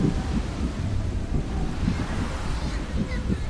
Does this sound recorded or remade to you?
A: remade